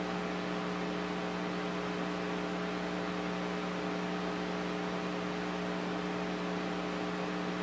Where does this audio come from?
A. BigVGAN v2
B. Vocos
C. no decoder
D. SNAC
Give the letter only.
C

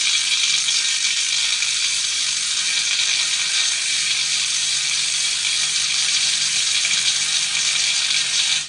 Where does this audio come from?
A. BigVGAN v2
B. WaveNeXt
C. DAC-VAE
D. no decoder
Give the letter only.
A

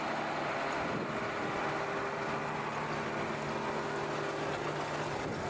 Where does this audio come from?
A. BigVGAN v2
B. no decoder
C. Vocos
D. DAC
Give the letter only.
B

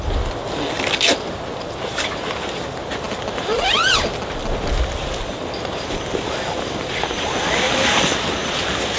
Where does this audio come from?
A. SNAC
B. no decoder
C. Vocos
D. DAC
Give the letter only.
B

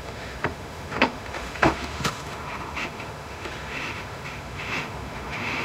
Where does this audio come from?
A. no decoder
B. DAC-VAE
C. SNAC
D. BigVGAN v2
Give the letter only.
B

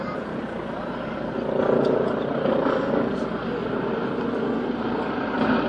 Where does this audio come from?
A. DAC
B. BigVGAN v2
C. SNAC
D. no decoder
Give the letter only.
D